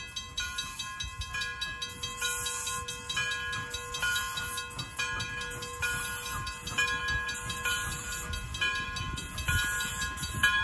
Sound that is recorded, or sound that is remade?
recorded